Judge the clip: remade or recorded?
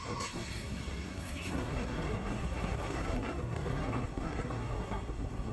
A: remade